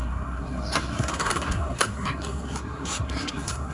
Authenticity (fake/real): fake